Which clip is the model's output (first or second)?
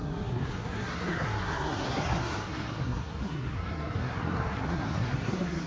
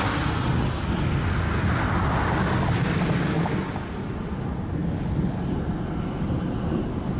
first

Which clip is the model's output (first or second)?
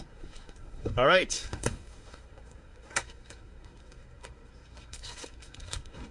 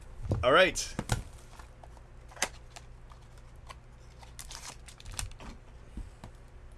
first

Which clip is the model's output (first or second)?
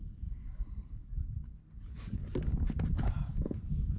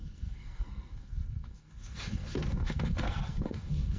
second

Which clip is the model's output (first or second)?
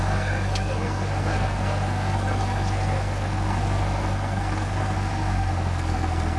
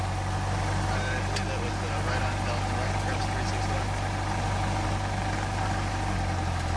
first